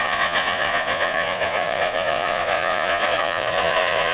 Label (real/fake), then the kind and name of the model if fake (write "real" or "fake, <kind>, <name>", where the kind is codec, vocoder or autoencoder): fake, vocoder, Vocos